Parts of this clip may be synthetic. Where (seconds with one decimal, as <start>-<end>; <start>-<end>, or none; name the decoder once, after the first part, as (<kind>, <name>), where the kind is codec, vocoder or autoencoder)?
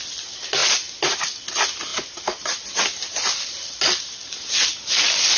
none